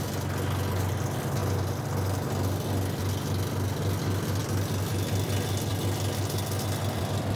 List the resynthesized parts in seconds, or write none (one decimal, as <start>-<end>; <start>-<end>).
none